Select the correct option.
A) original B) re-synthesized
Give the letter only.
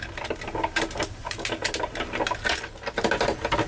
A